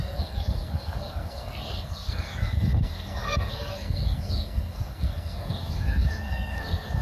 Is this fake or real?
fake